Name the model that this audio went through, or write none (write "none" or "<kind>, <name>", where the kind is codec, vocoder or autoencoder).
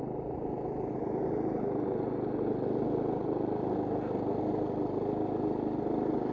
none